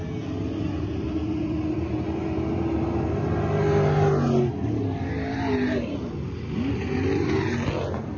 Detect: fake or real real